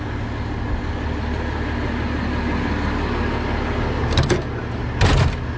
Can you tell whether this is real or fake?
real